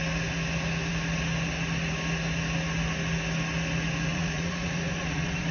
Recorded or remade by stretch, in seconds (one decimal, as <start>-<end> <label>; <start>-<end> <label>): 0.0-4.1 recorded; 4.1-5.5 remade

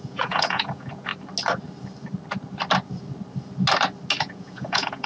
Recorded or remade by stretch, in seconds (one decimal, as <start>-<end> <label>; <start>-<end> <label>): 0.0-1.1 remade; 1.1-4.2 recorded; 4.2-5.1 remade

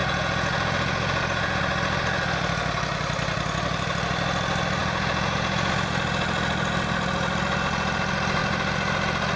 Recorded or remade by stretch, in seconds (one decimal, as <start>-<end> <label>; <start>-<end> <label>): 0.0-1.6 remade; 1.6-4.8 recorded; 4.8-5.7 remade; 5.7-9.4 recorded

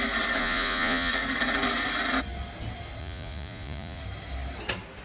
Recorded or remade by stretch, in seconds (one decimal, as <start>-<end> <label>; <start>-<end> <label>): 0.0-0.4 recorded; 0.4-1.1 remade; 1.1-3.0 recorded; 3.0-4.0 remade; 4.0-5.0 recorded

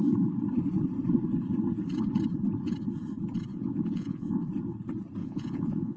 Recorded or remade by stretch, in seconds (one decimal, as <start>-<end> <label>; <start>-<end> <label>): 0.0-3.5 recorded; 3.5-4.4 remade; 4.4-5.2 recorded; 5.2-6.0 remade